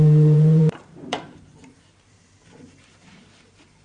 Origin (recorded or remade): remade